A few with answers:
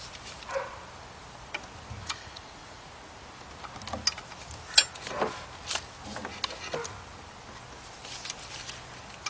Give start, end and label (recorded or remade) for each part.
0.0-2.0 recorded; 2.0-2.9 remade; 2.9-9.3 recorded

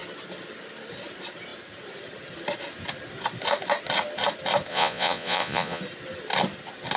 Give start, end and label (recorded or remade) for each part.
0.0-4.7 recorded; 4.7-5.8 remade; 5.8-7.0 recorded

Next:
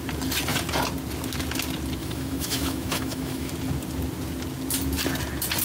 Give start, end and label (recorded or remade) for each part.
0.0-2.0 recorded; 2.0-3.5 remade; 3.5-5.6 recorded